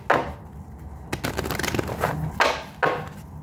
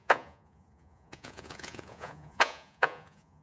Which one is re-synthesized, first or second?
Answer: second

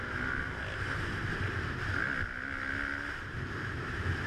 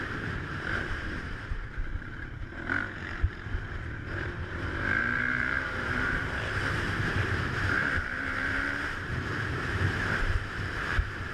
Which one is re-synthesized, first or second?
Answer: second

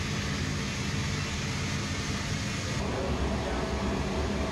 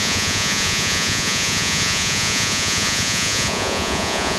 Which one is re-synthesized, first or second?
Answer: second